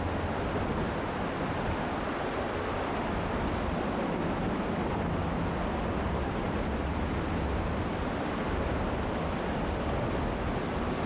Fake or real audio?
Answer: real